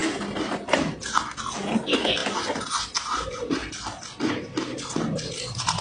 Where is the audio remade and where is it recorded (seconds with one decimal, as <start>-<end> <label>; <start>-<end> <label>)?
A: 0.0-5.8 recorded